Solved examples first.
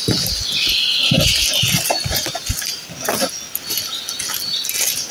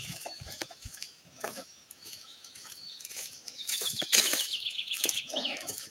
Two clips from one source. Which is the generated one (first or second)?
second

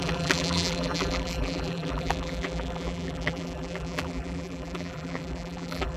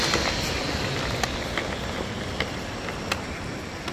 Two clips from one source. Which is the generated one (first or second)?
first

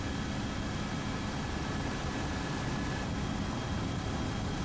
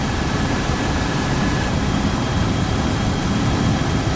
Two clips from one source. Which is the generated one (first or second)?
second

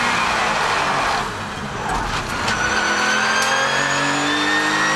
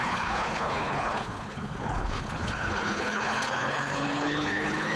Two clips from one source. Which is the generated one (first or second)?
second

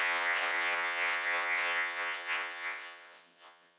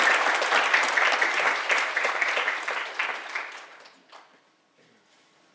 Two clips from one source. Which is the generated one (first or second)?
first